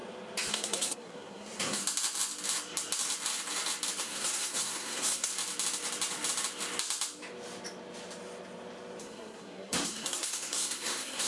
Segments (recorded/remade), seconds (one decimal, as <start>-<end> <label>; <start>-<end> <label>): 0.0-0.5 recorded; 0.5-1.8 remade; 1.8-4.0 recorded; 4.0-5.3 remade; 5.3-9.0 recorded; 9.0-11.3 remade